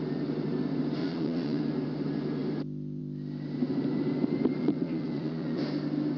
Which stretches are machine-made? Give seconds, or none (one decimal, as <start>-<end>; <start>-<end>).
1.0-1.6; 4.6-5.6